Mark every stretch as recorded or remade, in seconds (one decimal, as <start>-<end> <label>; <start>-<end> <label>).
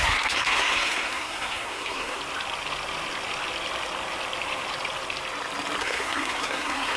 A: 0.0-2.2 remade; 2.2-5.8 recorded; 5.8-7.0 remade